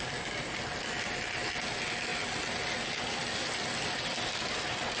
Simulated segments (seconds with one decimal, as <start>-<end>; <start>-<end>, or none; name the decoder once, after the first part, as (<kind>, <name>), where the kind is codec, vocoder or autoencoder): none